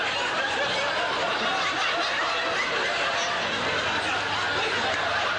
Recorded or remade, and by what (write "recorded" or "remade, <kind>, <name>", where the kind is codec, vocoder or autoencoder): recorded